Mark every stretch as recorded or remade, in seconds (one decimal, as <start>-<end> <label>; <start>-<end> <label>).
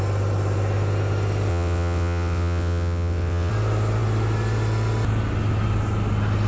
0.0-1.5 recorded; 1.5-3.5 remade; 3.5-6.5 recorded